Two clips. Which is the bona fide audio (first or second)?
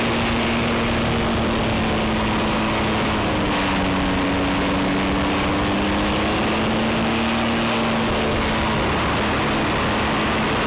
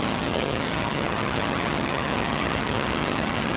first